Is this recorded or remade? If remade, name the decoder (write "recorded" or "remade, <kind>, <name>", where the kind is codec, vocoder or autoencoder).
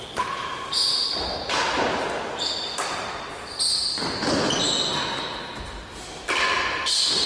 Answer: recorded